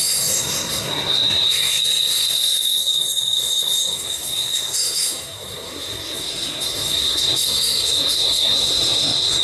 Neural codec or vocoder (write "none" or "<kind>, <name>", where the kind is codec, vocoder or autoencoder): codec, SNAC